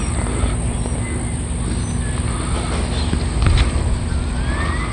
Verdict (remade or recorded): recorded